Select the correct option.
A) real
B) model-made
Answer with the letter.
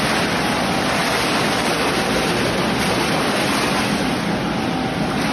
A